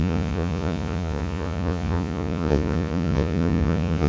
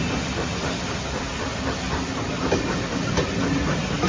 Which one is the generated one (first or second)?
first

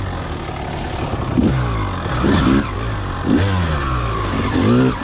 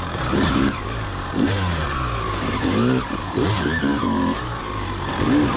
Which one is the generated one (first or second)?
second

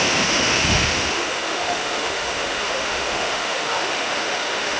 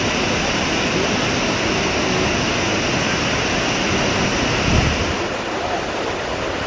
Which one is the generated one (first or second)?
first